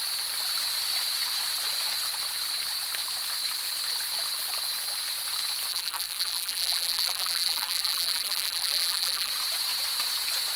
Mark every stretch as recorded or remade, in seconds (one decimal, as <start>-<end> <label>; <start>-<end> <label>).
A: 0.0-5.7 recorded; 5.7-9.3 remade; 9.3-10.6 recorded